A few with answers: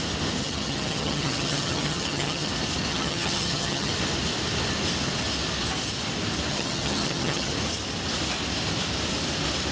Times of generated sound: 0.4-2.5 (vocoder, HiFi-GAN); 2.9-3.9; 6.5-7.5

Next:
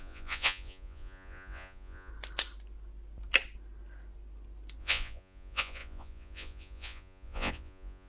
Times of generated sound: 0.0-2.1 (vocoder, Vocos); 4.8-8.1

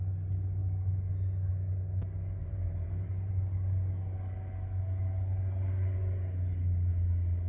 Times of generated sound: 2.4-3.3 (vocoder, BigVGAN v2)

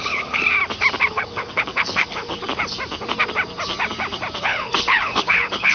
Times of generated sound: 0.0-0.4 (codec, HILCodec); 1.1-2.4; 4.4-5.7

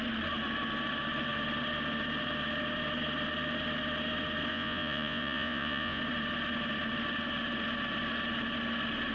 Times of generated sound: 4.5-6.0 (vocoder, Vocos)

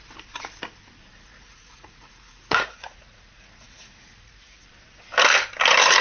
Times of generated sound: 1.1-4.7 (vocoder, Vocos)